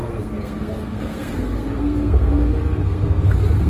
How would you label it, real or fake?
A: fake